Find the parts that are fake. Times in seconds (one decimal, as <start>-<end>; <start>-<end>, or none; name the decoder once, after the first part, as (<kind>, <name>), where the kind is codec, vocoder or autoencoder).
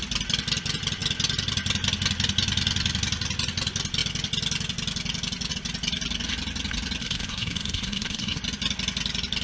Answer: 7.0-8.4 (codec, SNAC)